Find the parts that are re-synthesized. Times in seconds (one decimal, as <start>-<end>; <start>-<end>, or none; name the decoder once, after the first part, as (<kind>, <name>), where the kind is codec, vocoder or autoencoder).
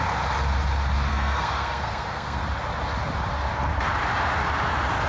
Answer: 1.1-2.4 (codec, SNAC)